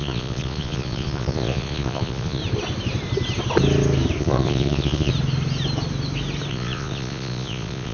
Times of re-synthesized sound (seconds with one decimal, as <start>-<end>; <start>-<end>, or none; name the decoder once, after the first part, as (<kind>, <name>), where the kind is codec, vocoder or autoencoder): 0.0-2.4 (vocoder, Vocos); 4.2-5.1; 6.5-7.9